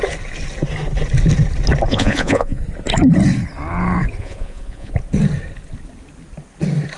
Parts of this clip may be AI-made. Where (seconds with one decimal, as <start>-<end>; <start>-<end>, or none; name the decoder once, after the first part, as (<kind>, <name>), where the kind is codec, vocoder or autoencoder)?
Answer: 1.9-2.6 (vocoder, Vocos); 4.2-4.9